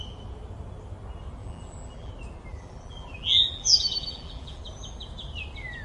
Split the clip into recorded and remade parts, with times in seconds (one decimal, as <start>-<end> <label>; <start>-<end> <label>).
0.0-1.4 recorded; 1.4-2.1 remade; 2.1-2.5 recorded; 2.5-4.6 remade; 4.6-5.8 recorded